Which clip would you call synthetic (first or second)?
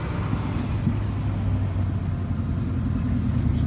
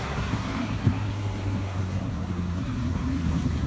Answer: second